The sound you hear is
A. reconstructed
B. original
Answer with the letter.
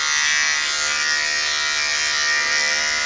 B